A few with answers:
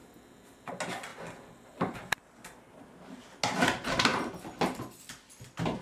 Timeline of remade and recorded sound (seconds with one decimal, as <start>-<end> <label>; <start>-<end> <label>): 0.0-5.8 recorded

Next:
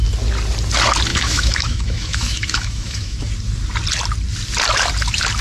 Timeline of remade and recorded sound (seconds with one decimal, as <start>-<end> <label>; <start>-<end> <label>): 0.0-1.1 recorded; 1.1-3.2 remade; 3.2-5.4 recorded

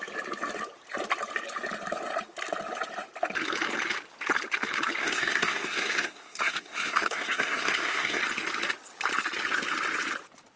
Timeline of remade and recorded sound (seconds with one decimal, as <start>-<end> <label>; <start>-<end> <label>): 0.0-5.0 recorded; 5.0-8.2 remade; 8.2-10.6 recorded